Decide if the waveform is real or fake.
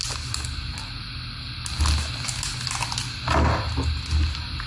real